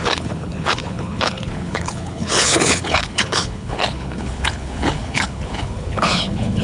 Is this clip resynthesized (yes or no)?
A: yes